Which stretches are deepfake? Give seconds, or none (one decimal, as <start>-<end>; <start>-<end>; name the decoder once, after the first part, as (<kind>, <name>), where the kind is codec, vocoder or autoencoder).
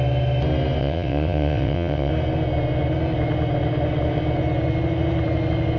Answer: 0.8-2.1 (vocoder, WaveNeXt)